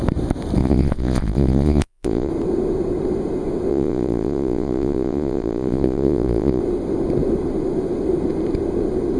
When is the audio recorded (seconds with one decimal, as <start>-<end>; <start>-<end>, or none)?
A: 0.0-0.6; 2.3-3.7; 6.6-9.2